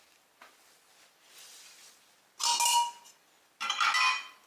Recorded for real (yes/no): yes